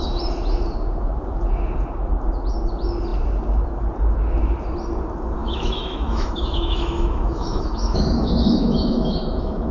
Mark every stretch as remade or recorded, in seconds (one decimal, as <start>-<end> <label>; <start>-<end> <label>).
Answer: 0.0-5.4 recorded; 5.4-9.7 remade